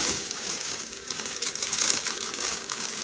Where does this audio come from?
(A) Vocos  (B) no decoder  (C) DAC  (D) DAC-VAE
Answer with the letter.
C